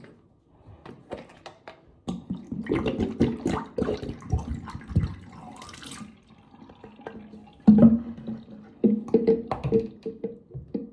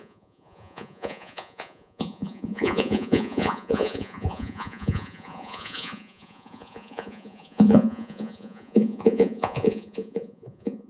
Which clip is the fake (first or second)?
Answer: second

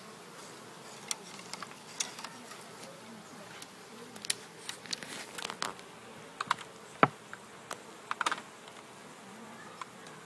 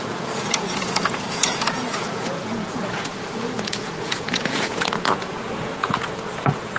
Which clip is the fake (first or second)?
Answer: second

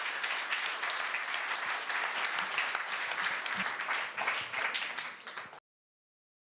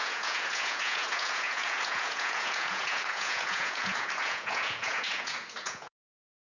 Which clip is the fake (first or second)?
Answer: second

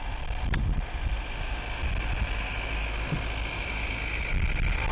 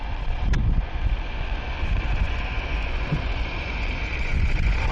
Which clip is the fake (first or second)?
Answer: second